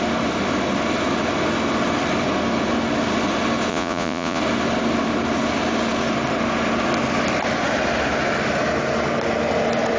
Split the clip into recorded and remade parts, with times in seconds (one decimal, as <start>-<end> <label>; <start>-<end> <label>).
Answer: 0.0-3.7 recorded; 3.7-4.4 remade; 4.4-10.0 recorded